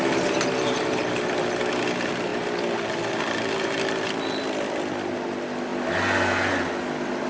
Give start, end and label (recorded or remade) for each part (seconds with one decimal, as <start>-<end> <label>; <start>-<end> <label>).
0.0-7.3 recorded